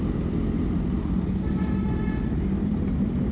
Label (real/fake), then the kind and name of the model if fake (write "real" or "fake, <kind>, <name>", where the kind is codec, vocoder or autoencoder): real